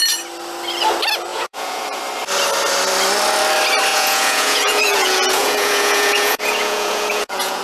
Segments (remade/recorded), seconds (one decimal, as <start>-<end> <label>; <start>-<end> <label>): 0.0-1.3 recorded; 1.3-2.0 remade; 2.0-3.9 recorded; 3.9-7.6 remade